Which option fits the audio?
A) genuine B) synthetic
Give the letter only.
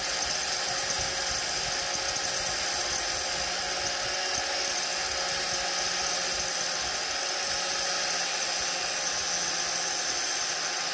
A